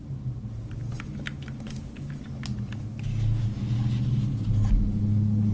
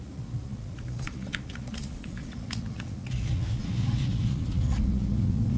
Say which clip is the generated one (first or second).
second